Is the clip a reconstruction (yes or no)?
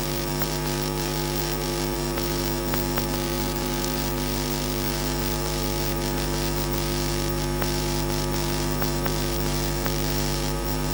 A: yes